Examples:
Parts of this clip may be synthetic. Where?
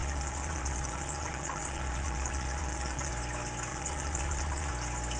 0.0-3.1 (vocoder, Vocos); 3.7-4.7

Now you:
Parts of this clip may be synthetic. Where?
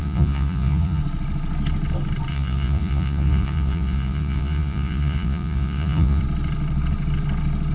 0.0-1.0 (vocoder, Vocos); 2.3-6.2